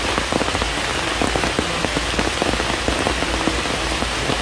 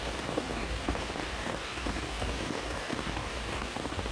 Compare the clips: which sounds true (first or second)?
first